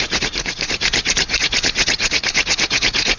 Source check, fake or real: fake